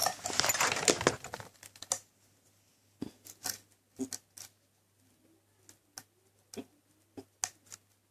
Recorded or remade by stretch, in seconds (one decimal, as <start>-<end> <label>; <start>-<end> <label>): 0.0-8.1 recorded